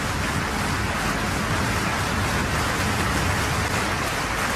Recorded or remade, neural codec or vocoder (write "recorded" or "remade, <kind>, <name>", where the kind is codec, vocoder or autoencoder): recorded